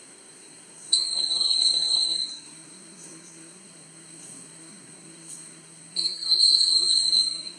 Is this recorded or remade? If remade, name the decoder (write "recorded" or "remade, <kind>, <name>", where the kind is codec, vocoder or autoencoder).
remade, codec, SNAC